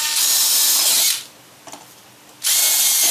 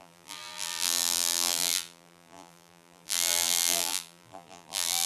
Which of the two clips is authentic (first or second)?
first